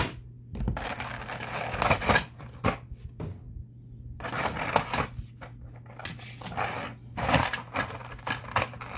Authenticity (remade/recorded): recorded